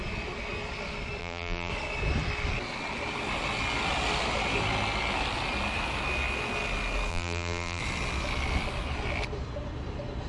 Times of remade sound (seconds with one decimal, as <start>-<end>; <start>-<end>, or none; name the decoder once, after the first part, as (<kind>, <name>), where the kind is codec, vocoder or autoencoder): 1.2-1.7 (vocoder, BigVGAN v2); 7.1-7.8